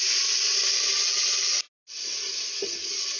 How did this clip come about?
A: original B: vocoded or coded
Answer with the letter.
A